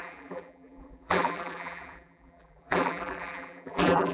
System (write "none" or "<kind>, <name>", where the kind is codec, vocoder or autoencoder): vocoder, BigVGAN v2